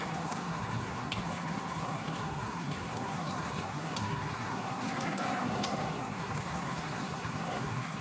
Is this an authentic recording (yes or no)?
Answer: no